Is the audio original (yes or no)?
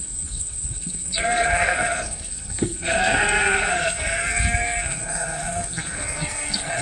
no